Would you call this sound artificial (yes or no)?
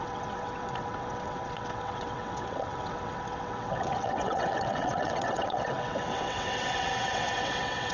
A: yes